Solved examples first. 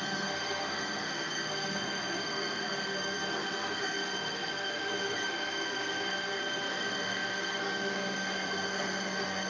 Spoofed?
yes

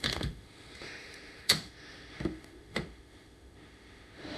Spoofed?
yes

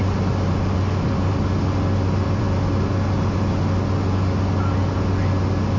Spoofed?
no